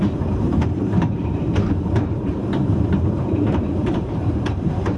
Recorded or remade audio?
remade